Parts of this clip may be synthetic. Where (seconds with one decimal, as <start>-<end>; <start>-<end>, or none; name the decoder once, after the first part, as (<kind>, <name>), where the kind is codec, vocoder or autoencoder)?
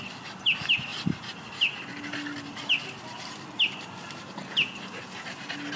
none